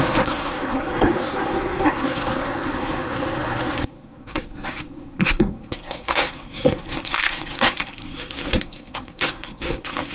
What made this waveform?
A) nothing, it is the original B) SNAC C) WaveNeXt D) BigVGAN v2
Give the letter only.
B